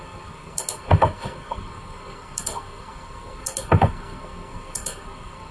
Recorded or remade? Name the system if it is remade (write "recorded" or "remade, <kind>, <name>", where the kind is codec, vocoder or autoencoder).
remade, codec, SNAC